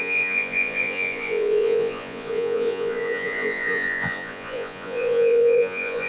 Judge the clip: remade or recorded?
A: remade